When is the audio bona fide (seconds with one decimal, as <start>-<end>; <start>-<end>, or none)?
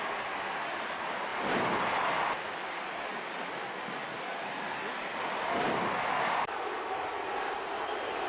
0.0-8.3